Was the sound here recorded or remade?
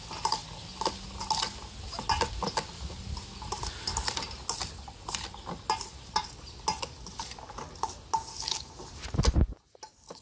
recorded